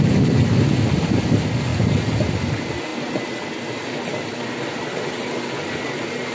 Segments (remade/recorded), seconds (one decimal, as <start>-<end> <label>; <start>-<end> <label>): 0.0-6.3 recorded